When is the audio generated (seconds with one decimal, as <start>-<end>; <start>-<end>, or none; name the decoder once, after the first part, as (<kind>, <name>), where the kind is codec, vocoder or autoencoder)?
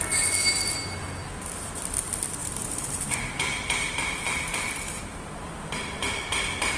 2.4-6.8 (vocoder, BigVGAN v2)